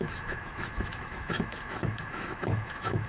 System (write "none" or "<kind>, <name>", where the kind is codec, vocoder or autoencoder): autoencoder, DAC-VAE